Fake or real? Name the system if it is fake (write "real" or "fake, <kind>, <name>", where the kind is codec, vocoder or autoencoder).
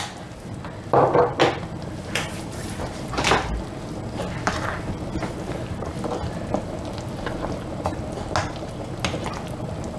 real